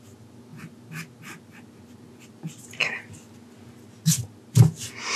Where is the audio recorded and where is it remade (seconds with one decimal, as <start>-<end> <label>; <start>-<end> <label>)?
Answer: 0.0-5.2 recorded